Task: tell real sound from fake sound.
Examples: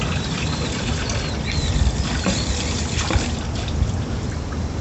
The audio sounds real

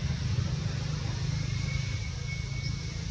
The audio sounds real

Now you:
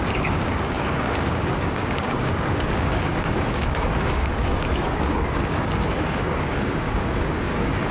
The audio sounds fake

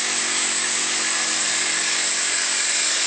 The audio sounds fake